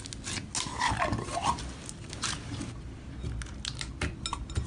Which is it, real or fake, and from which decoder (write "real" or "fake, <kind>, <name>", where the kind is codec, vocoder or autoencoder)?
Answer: real